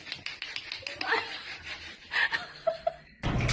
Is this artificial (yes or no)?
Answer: no